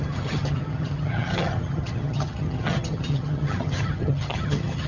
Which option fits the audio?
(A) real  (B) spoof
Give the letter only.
B